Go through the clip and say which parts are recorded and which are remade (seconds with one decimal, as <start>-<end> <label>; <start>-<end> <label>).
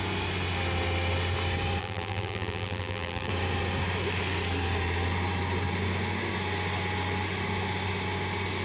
0.0-1.8 recorded; 1.8-3.3 remade; 3.3-8.6 recorded